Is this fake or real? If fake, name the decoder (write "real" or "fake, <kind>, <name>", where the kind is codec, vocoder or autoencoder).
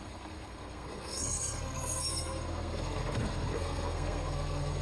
fake, codec, SNAC